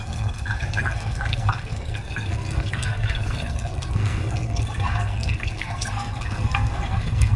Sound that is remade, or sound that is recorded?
remade